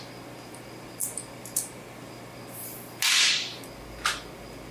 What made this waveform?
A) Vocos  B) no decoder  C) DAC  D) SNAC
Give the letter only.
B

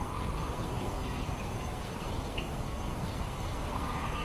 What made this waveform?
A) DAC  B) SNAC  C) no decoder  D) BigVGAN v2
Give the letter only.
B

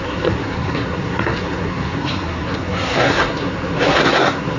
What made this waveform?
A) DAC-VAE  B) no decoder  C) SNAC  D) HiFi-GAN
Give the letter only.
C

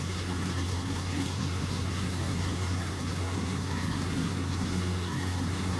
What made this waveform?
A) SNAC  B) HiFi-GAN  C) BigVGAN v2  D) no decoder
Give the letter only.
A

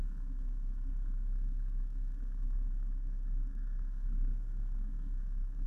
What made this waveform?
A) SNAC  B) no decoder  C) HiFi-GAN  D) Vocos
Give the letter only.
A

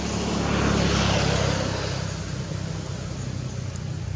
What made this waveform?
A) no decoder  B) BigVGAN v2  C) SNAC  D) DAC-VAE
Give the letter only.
A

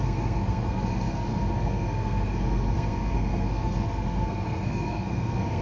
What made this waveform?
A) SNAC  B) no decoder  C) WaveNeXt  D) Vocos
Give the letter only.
A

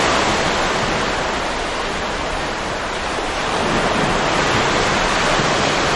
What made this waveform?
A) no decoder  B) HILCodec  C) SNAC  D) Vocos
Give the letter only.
A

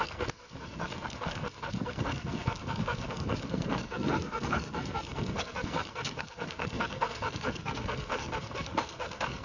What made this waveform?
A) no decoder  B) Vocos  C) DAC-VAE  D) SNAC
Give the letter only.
D